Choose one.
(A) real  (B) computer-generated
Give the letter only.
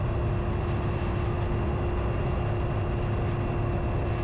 A